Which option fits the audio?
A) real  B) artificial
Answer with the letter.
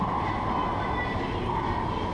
A